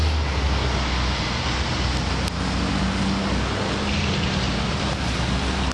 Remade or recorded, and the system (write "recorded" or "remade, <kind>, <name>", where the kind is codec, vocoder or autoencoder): recorded